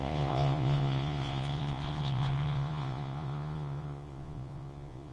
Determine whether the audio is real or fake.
fake